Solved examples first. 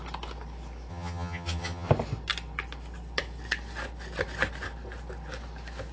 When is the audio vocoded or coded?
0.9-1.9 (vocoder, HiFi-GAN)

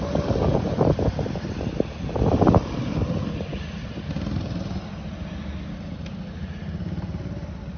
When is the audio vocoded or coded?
none

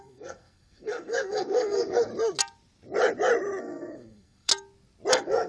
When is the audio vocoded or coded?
0.0-2.1 (codec, SNAC); 3.6-4.5; 5.1-5.5

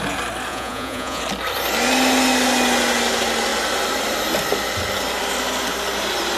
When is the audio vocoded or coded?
0.5-1.2 (vocoder, Vocos)

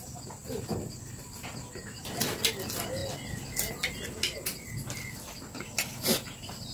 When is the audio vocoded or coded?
0.4-1.5 (vocoder, BigVGAN v2); 3.0-3.9